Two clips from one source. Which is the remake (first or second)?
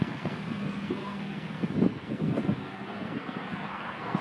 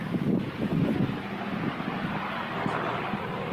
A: first